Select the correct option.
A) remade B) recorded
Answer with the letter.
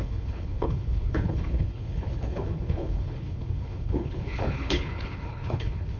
A